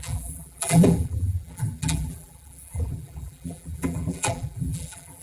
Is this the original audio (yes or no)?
no